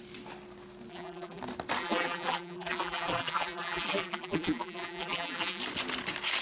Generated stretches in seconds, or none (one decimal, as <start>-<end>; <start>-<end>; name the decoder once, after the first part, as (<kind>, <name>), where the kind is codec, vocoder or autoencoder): 0.9-1.4 (vocoder, BigVGAN v2); 1.8-5.6